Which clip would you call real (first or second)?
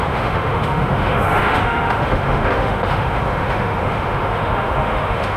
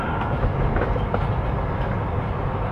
second